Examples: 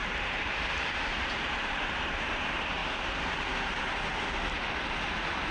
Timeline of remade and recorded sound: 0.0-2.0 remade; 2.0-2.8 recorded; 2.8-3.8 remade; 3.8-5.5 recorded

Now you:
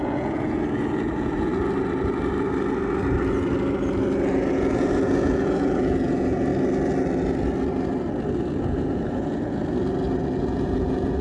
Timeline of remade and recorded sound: 0.0-1.5 remade; 1.5-4.3 recorded; 4.3-6.5 remade; 6.5-8.6 recorded; 8.6-9.6 remade; 9.6-10.4 recorded; 10.4-11.2 remade

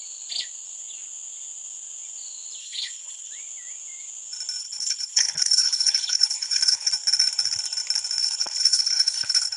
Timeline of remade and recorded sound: 0.0-2.6 recorded; 2.6-3.3 remade; 3.3-4.6 recorded; 4.6-6.9 remade; 6.9-8.2 recorded; 8.2-9.6 remade